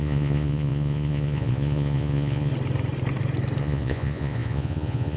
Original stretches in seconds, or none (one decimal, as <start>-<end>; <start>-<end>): 2.5-3.6